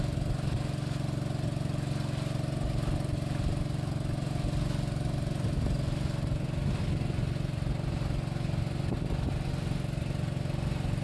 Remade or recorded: recorded